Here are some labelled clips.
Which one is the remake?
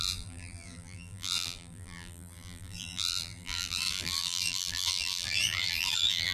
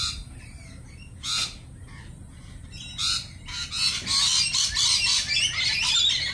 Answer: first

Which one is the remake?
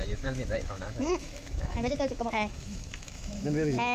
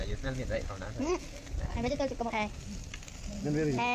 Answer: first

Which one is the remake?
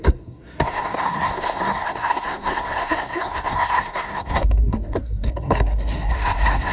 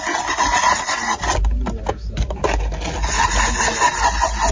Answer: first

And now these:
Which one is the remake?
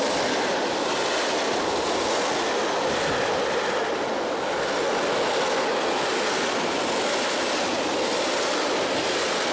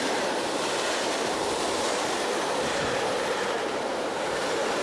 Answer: second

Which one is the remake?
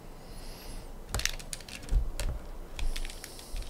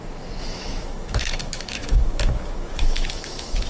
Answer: second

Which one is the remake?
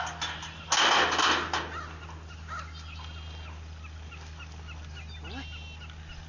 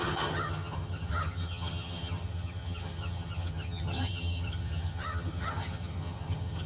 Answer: second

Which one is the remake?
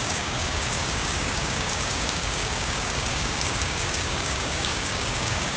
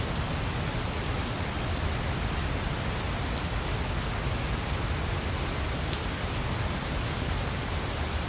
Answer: first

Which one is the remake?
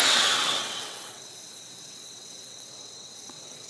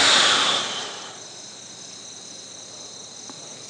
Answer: first